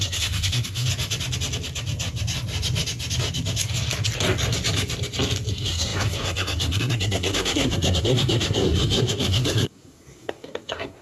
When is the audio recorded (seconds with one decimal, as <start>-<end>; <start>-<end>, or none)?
0.9-5.5